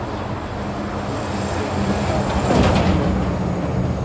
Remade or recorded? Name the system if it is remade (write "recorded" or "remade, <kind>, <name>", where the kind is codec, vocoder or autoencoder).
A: recorded